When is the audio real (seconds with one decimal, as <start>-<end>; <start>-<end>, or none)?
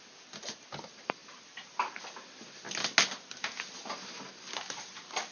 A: 0.0-5.3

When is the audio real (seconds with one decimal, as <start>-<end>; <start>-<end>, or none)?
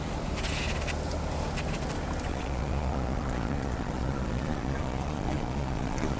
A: 0.0-2.3